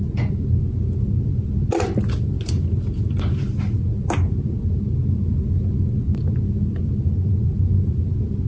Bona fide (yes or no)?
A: yes